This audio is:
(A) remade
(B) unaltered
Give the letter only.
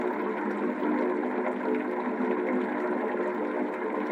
B